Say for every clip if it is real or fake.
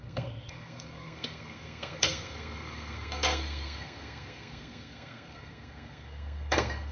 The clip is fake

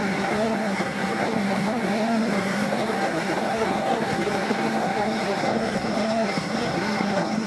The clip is fake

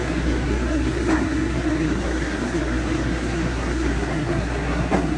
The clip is fake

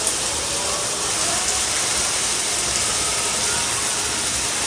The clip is real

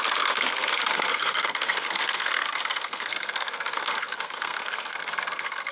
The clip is fake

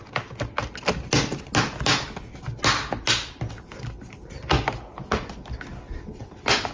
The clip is real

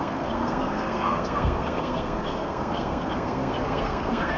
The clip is fake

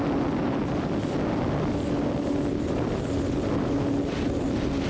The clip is real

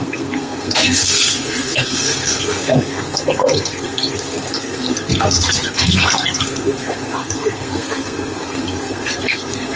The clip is fake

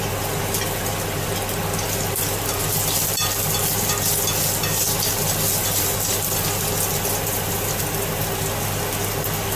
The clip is real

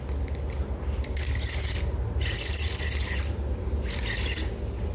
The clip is real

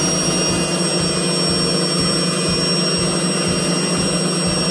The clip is real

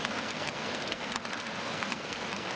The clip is fake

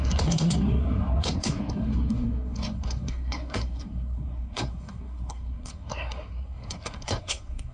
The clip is fake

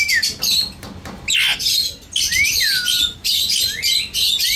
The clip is real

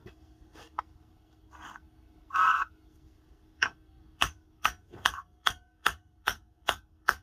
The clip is fake